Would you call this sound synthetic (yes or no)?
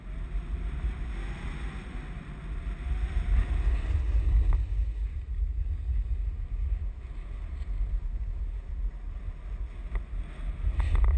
no